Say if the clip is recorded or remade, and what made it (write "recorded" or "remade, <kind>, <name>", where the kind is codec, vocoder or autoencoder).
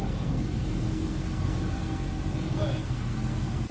remade, codec, SNAC